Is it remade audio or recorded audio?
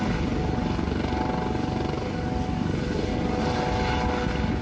recorded